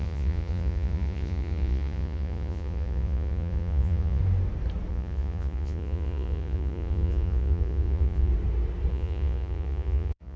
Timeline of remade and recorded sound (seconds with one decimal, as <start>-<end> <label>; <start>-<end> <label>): 0.0-4.2 remade; 4.2-4.9 recorded; 4.9-8.3 remade; 8.3-8.9 recorded; 8.9-10.4 remade